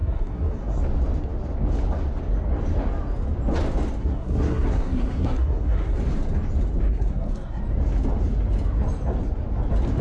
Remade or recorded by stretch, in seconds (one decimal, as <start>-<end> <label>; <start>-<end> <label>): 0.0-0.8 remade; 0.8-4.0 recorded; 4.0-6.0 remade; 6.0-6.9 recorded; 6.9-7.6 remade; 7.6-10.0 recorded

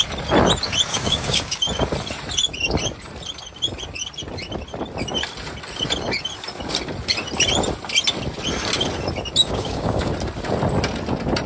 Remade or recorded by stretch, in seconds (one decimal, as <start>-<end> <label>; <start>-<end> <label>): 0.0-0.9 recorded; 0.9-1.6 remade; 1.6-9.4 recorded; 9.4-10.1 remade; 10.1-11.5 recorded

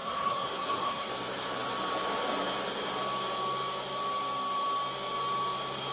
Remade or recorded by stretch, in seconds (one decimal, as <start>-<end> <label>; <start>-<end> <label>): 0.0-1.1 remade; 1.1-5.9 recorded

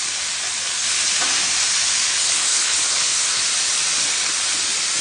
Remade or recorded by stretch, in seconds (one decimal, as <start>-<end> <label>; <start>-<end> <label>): 0.0-2.2 recorded; 2.2-3.4 remade; 3.4-5.0 recorded

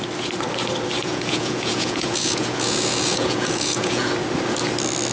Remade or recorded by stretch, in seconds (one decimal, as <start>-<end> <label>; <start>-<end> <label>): 0.0-1.0 recorded; 1.0-4.1 remade; 4.1-5.1 recorded

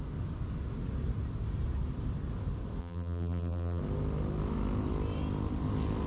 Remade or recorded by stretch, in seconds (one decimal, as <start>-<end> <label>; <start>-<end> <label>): 0.0-2.8 recorded; 2.8-3.8 remade; 3.8-6.1 recorded